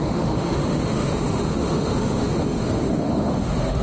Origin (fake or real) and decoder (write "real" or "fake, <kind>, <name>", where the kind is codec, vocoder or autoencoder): fake, autoencoder, DAC-VAE